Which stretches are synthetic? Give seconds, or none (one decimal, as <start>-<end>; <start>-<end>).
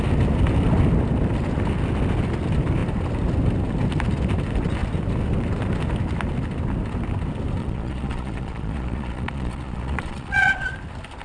7.6-10.7